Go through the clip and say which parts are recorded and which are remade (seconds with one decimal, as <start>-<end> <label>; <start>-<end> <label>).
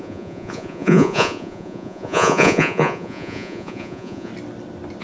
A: 0.0-4.3 remade; 4.3-5.0 recorded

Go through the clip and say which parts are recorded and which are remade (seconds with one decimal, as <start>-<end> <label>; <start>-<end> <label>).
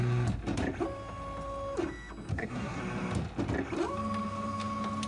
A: 0.0-2.3 recorded; 2.3-2.8 remade; 2.8-5.1 recorded